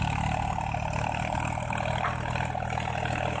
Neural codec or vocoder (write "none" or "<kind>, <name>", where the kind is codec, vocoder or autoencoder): none